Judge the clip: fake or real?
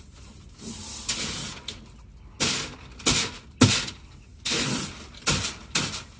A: real